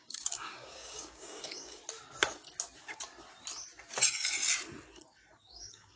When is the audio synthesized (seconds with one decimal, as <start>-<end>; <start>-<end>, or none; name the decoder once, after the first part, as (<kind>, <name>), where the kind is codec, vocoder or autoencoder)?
0.0-1.8 (codec, DAC); 5.4-6.0